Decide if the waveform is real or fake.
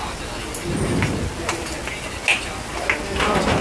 real